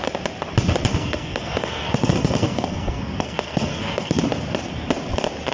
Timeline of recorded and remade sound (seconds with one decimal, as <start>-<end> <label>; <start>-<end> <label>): 0.0-0.9 recorded; 0.9-4.2 remade; 4.2-5.5 recorded